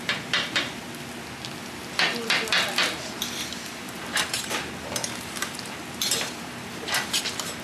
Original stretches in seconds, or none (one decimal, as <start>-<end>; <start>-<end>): 0.8-2.8